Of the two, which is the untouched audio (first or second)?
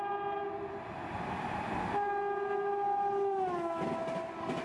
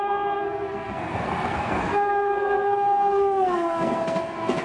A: first